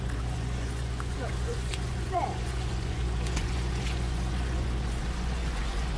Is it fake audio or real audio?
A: fake